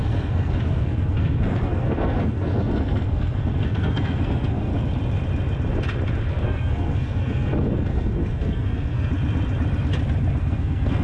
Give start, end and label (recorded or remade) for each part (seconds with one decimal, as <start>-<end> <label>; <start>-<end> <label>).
0.0-4.7 remade; 4.7-6.3 recorded; 6.3-9.1 remade; 9.1-10.4 recorded; 10.4-11.0 remade